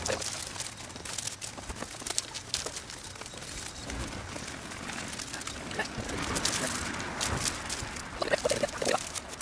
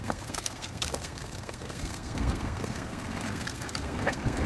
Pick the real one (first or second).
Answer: first